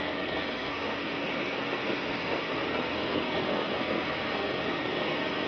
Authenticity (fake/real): fake